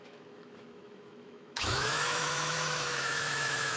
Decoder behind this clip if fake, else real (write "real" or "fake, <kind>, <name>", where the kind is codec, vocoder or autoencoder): fake, autoencoder, DAC-VAE